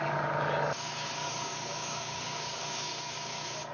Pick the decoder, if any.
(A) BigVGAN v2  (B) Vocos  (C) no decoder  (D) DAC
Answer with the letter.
D